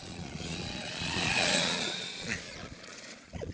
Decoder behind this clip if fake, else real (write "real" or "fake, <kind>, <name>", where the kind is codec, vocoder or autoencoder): fake, vocoder, Vocos